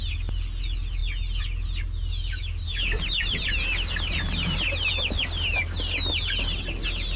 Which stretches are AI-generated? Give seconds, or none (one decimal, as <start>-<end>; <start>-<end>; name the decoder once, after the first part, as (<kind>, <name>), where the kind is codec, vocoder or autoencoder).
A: none